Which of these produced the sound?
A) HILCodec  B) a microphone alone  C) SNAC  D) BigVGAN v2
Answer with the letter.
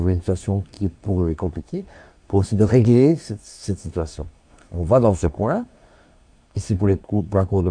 C